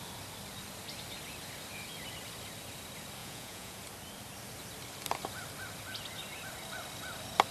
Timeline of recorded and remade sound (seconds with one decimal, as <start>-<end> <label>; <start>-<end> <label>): 0.0-3.2 recorded; 3.2-3.8 remade; 3.8-7.5 recorded